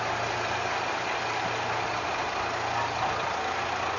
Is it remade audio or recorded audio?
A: recorded